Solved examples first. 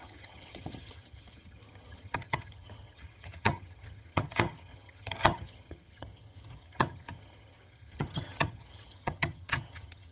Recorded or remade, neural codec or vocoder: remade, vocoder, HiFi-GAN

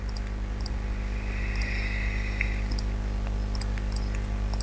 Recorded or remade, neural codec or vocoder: recorded